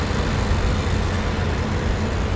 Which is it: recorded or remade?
recorded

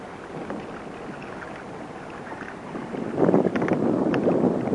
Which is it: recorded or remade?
recorded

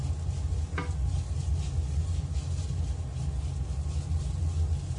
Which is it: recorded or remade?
recorded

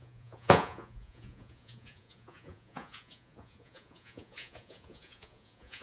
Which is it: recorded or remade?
remade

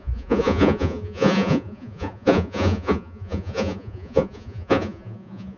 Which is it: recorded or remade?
remade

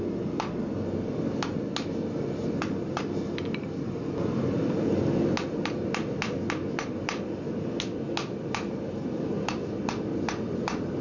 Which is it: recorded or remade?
recorded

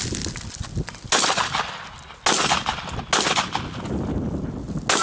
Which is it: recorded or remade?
recorded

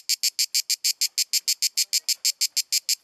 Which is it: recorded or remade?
recorded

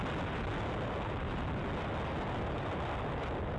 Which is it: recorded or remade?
recorded